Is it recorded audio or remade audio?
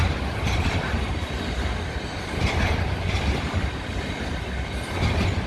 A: recorded